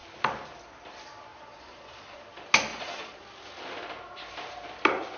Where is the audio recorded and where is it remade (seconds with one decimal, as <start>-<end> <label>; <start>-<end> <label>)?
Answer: 0.0-1.3 recorded; 1.3-2.2 remade; 2.2-2.7 recorded; 2.7-3.2 remade; 3.2-5.2 recorded